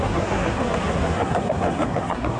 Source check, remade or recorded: remade